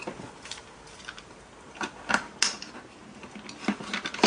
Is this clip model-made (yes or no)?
no